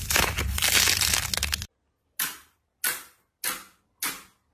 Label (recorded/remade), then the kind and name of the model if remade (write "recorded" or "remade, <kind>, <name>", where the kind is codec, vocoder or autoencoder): recorded